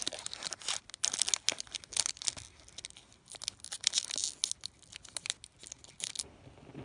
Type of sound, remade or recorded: recorded